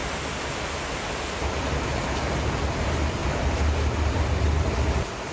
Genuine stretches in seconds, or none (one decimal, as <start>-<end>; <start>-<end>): 3.2-4.1